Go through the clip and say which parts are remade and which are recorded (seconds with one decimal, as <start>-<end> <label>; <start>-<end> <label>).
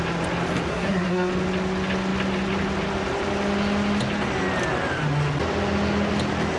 0.0-0.7 recorded; 0.7-1.3 remade; 1.3-6.6 recorded